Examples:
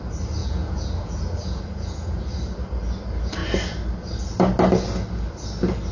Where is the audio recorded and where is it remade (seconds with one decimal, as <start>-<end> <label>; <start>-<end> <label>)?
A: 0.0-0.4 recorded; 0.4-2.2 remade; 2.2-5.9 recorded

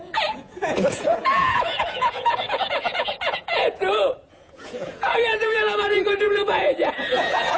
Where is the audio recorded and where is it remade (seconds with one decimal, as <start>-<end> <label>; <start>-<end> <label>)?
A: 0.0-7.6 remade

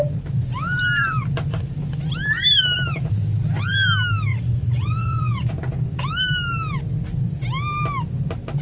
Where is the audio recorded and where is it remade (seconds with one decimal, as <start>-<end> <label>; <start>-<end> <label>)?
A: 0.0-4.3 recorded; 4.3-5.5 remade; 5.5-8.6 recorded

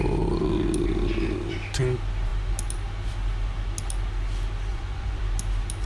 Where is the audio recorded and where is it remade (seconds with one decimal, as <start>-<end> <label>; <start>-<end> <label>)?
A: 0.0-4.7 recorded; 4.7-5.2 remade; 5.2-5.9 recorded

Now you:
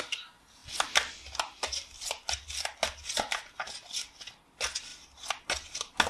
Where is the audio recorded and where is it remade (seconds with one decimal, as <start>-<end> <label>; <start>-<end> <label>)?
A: 0.0-6.1 recorded

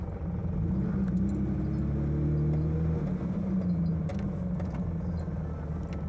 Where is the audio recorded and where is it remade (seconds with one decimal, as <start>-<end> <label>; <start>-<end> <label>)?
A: 0.0-6.1 recorded

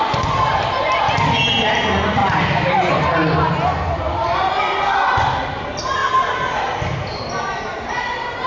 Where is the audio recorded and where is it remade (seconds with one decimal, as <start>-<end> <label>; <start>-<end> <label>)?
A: 0.0-8.5 recorded

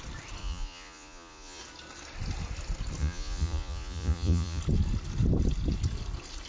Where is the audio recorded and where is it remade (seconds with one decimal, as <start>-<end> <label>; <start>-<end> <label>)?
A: 0.0-0.4 recorded; 0.4-1.6 remade; 1.6-3.0 recorded; 3.0-4.6 remade; 4.6-6.5 recorded